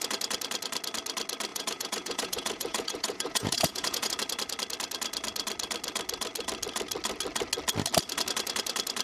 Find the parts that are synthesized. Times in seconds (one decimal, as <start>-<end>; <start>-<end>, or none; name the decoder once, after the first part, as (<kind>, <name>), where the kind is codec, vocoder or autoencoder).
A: 1.5-4.1 (vocoder, Vocos)